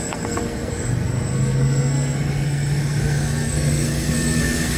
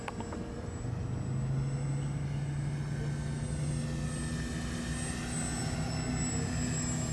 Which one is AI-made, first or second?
first